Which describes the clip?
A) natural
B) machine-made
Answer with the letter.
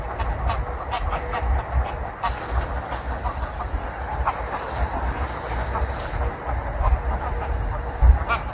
A